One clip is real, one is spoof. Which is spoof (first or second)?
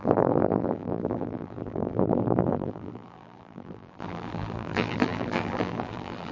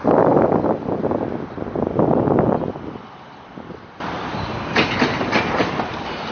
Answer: first